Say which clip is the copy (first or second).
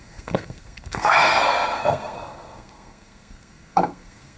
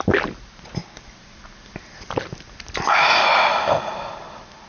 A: first